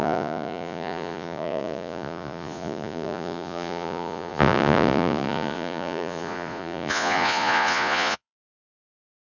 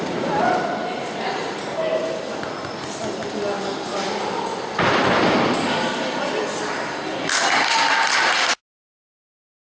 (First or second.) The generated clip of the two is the first